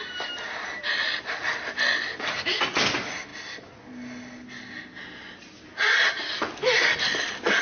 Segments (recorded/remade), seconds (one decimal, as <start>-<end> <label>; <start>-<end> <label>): 0.0-2.1 recorded; 2.1-2.6 remade; 2.6-7.6 recorded